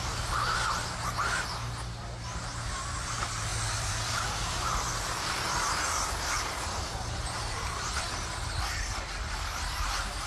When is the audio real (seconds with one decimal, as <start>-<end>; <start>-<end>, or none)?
0.0-3.5; 8.0-10.3